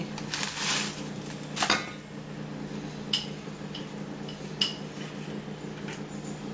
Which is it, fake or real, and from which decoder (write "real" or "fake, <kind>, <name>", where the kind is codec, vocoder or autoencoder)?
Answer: real